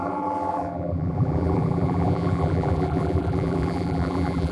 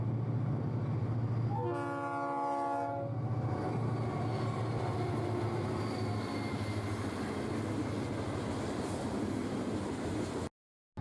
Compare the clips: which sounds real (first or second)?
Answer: second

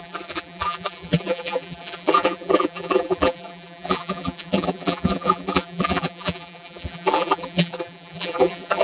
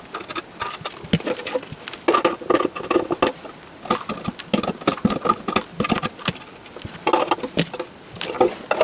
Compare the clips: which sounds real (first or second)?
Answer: second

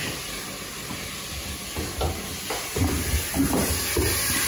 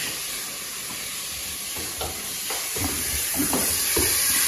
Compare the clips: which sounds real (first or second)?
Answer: first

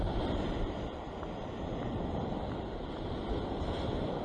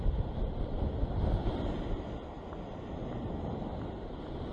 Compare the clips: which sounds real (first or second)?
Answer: second